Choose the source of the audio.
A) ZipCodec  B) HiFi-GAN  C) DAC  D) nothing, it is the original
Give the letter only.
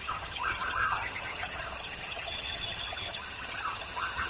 B